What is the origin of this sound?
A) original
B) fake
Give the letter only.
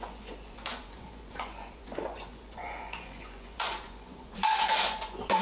B